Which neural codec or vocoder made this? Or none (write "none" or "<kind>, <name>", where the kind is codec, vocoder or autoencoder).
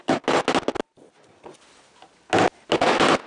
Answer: none